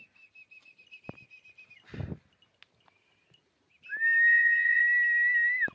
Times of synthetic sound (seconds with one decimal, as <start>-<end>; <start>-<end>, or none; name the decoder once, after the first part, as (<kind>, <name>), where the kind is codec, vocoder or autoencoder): 4.3-4.8 (vocoder, Vocos)

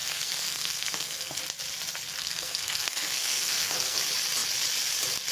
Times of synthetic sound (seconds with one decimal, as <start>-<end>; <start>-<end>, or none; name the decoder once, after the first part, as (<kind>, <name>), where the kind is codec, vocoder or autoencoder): 0.0-1.4 (codec, SNAC); 2.2-4.0

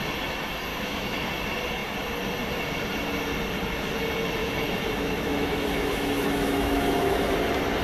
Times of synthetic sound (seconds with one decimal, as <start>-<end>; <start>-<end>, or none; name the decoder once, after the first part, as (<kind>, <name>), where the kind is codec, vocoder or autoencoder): 0.7-1.3 (autoencoder, DAC-VAE); 4.4-7.3

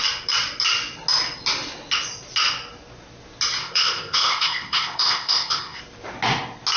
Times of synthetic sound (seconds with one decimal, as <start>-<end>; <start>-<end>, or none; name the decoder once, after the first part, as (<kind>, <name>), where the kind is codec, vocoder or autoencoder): 3.6-5.8 (codec, ZipCodec)

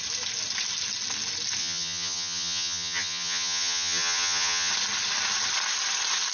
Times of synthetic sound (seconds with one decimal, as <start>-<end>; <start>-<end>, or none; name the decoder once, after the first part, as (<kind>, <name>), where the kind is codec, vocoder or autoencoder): 1.6-4.7 (vocoder, HiFi-GAN)

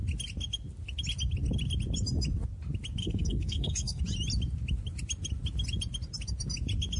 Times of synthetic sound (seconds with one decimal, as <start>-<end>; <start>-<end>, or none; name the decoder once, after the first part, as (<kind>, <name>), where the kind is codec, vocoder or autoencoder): 3.0-4.0 (codec, SNAC)

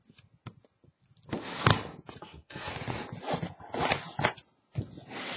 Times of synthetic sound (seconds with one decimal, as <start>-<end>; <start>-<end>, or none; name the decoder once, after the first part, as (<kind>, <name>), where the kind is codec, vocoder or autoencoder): 2.2-2.7 (codec, SNAC)

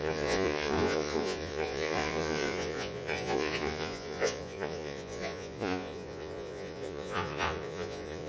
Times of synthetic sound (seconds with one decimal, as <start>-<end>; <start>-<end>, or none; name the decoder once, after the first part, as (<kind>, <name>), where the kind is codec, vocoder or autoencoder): 0.0-8.3 (vocoder, Vocos)